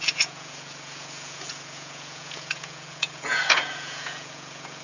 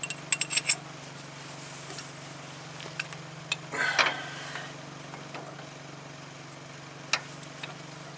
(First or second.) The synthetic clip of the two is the first